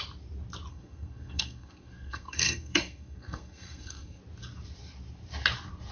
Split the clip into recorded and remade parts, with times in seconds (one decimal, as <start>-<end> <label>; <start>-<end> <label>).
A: 0.0-0.7 recorded; 0.7-4.2 remade; 4.2-5.9 recorded